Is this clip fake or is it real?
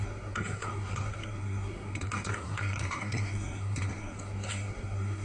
fake